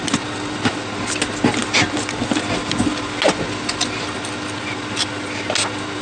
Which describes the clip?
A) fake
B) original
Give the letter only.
B